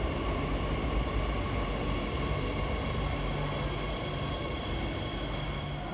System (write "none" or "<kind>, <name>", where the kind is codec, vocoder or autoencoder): none